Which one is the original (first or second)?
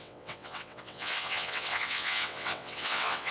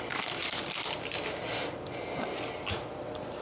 second